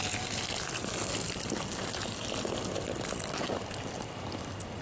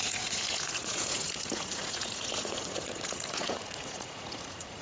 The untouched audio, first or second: first